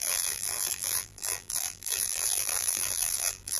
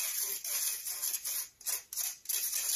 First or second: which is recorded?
second